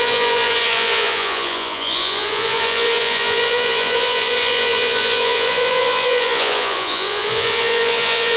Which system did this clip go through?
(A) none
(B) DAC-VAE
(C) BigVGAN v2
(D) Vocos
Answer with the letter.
D